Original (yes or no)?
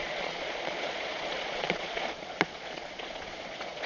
no